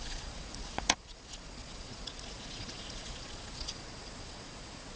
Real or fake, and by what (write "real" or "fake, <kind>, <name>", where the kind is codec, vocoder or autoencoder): fake, vocoder, Vocos